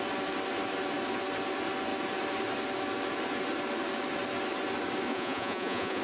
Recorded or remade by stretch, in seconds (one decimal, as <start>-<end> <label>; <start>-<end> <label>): 0.0-5.1 recorded; 5.1-6.0 remade